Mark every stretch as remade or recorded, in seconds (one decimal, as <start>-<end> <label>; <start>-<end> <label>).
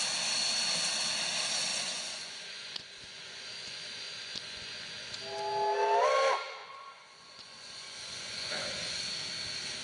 0.0-1.7 recorded; 1.7-5.2 remade; 5.2-6.6 recorded; 6.6-9.0 remade; 9.0-9.8 recorded